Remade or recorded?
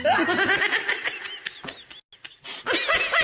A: recorded